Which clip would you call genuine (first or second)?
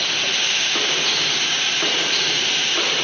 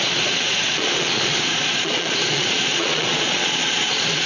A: first